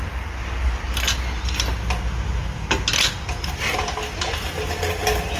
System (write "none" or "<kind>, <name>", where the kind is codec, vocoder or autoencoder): none